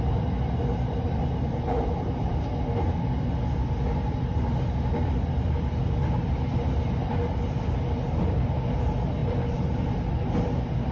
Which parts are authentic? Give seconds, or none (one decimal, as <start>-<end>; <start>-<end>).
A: 0.0-10.9